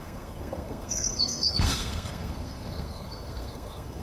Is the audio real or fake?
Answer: fake